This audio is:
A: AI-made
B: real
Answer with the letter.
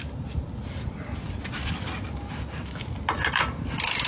B